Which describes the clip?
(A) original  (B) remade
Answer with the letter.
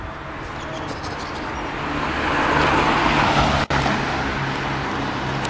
A